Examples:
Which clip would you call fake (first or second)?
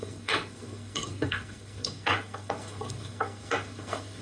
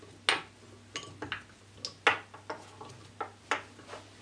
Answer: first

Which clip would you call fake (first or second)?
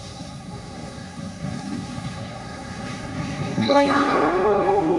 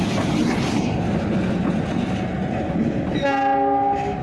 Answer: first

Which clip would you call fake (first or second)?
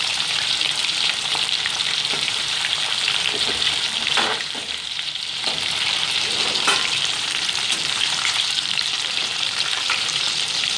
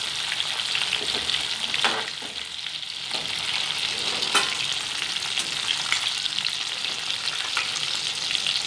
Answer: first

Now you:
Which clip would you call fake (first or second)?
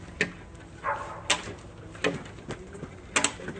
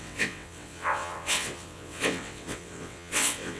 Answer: second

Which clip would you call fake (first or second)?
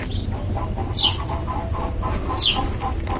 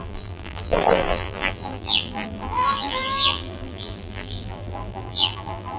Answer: second